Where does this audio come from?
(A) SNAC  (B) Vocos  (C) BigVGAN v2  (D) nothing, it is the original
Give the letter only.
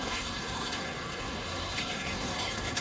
A